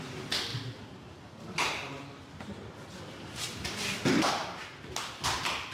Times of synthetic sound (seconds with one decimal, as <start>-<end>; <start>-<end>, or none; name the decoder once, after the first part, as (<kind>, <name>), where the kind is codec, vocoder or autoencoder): none